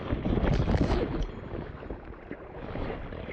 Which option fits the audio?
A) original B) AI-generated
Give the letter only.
A